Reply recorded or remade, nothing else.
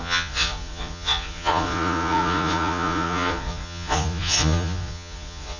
remade